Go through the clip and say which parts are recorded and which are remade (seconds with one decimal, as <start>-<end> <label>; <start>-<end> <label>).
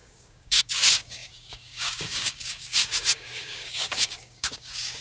0.0-5.0 remade